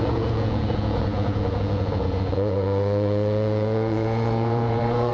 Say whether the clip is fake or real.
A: fake